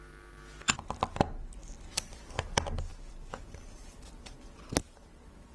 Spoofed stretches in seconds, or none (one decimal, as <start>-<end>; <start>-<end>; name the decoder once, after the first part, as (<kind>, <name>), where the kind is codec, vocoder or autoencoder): 1.6-2.1 (vocoder, BigVGAN v2); 2.9-4.1